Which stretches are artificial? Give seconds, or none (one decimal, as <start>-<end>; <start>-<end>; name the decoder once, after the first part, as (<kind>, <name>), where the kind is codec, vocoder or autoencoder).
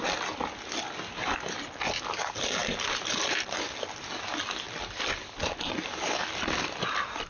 none